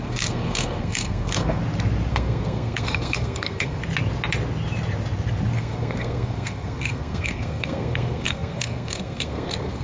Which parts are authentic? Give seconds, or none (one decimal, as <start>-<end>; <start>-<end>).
1.6-2.1; 3.8-5.6